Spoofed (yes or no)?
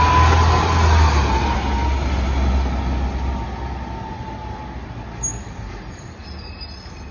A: no